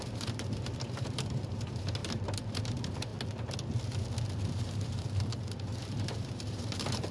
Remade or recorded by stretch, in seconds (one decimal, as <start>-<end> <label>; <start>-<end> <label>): 0.0-3.1 remade; 3.1-4.5 recorded; 4.5-7.1 remade